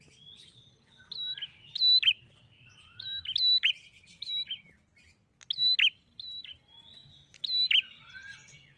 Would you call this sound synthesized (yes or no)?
no